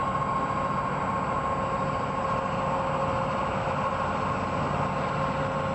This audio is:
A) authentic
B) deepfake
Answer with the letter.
A